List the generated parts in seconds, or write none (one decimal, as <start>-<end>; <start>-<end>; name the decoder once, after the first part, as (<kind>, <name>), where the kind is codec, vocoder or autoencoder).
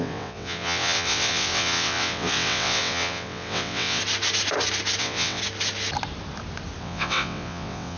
0.0-4.0 (vocoder, WaveNeXt); 5.0-5.4; 6.8-8.0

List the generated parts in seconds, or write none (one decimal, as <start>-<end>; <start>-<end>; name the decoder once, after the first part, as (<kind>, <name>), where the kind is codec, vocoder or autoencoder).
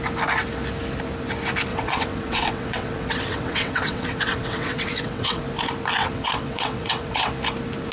1.7-5.4 (vocoder, WaveNeXt); 6.0-7.3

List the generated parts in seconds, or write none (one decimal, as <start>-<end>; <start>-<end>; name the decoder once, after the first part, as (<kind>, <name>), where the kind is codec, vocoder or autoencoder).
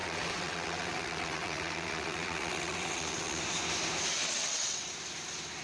0.0-3.4 (vocoder, WaveNeXt); 4.2-4.9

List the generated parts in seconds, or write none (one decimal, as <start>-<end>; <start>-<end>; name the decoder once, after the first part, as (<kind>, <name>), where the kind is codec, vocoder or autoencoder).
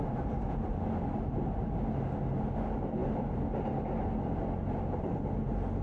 none